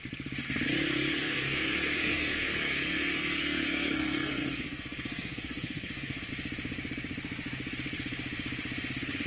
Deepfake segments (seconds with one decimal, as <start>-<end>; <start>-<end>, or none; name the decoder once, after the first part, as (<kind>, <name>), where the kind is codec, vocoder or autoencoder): 1.2-6.3 (codec, SNAC)